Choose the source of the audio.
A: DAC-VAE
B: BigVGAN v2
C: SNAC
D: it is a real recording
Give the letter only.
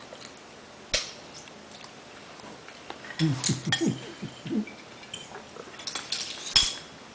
D